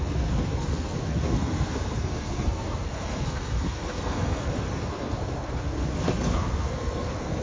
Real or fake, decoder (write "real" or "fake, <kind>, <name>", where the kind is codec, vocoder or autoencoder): fake, codec, SNAC